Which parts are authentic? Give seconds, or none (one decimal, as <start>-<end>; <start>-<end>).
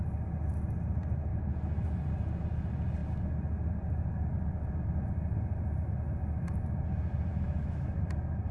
0.0-7.3; 7.9-8.5